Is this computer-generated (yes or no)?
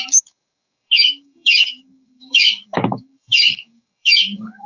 yes